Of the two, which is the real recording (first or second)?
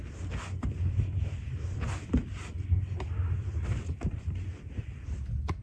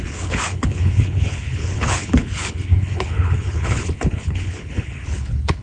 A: first